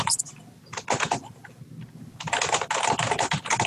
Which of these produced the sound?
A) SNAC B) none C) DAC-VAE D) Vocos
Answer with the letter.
B